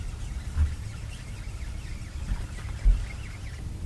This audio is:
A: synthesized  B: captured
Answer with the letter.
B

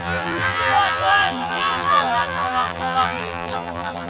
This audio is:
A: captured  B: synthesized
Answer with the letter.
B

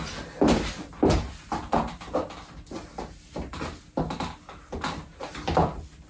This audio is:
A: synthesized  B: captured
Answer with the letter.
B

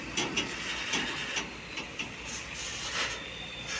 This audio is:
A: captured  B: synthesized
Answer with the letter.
A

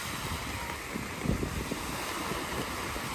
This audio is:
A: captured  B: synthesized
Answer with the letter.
A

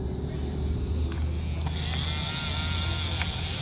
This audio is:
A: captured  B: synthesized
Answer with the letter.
A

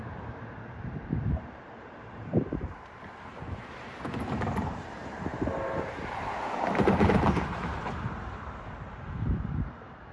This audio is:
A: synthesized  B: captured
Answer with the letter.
A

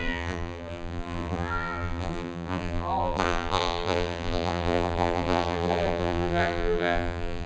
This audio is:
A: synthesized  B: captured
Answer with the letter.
A